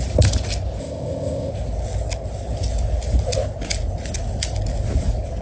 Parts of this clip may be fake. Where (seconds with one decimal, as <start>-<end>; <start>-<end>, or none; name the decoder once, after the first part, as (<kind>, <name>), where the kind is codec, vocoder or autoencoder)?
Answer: 0.8-1.5 (codec, ZipCodec)